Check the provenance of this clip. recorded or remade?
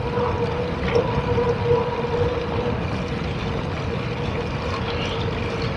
recorded